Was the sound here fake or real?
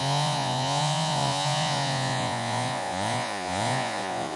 fake